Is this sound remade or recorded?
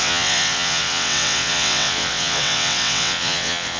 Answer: remade